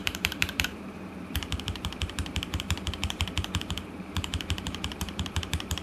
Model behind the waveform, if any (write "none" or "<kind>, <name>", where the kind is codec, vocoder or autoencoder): vocoder, BigVGAN v2